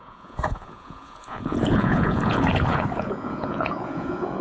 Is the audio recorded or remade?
remade